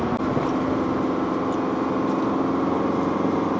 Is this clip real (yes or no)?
yes